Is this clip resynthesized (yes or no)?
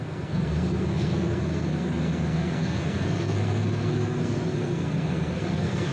yes